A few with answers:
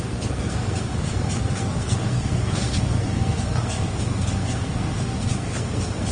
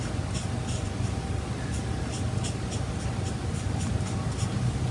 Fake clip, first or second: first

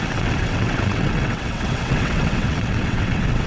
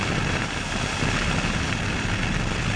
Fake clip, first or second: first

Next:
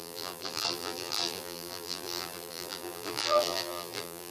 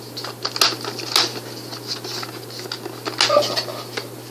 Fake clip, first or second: first